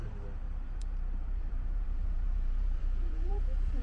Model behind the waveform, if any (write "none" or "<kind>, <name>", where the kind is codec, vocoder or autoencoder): vocoder, BigVGAN v2